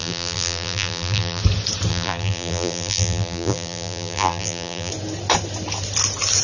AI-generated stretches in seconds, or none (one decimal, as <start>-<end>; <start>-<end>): 0.0-1.4; 1.9-4.9